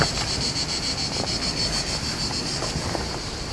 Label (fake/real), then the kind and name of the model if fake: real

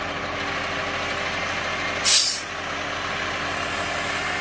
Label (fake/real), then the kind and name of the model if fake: real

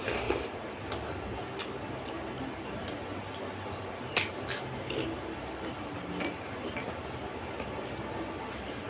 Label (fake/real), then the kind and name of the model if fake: real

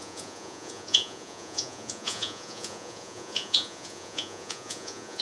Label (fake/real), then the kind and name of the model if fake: fake, vocoder, Vocos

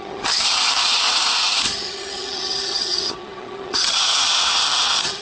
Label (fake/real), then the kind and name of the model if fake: fake, vocoder, HiFi-GAN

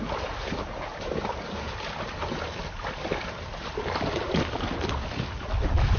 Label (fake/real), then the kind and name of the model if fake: real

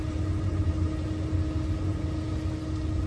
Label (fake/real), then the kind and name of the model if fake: real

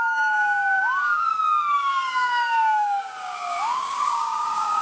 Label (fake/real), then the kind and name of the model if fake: fake, codec, DAC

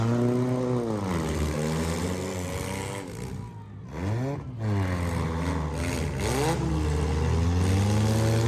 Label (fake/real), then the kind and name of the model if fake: real